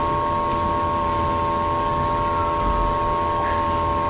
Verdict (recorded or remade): recorded